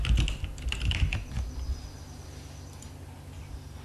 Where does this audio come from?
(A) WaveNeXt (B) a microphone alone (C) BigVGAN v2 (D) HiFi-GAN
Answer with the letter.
B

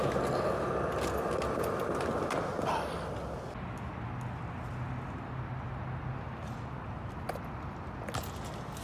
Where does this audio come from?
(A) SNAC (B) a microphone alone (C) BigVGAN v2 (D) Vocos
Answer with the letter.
B